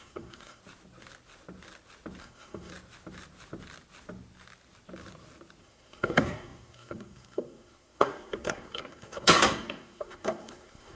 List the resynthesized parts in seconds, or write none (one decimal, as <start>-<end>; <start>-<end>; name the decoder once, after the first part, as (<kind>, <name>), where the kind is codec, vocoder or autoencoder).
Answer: 0.0-0.6 (codec, SNAC); 2.2-2.7; 5.6-11.0